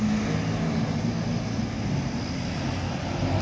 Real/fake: real